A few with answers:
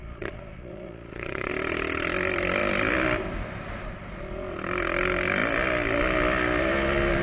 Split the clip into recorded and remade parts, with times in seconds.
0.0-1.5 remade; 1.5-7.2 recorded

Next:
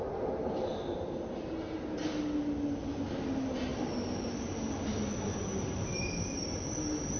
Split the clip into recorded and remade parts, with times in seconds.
0.0-7.2 recorded

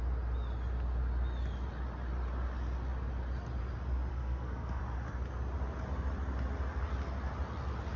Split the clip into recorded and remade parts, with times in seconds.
0.0-4.1 recorded; 4.1-4.8 remade; 4.8-8.0 recorded

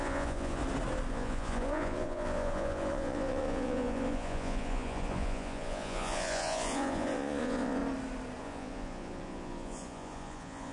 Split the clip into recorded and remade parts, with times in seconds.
0.0-0.6 remade; 0.6-1.1 recorded; 1.1-7.8 remade; 7.8-8.4 recorded; 8.4-10.7 remade

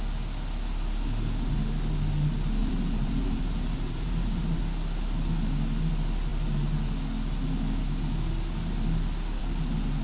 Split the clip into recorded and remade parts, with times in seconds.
0.0-2.6 recorded; 2.6-4.6 remade; 4.6-10.0 recorded

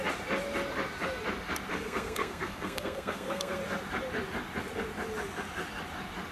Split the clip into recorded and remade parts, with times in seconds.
0.0-1.7 recorded; 1.7-3.6 remade; 3.6-6.3 recorded

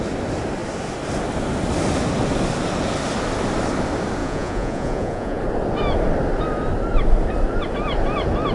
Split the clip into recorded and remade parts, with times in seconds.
0.0-4.2 recorded; 4.2-5.4 remade; 5.4-8.5 recorded